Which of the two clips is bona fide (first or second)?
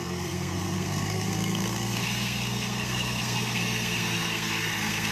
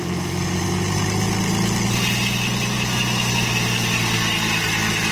second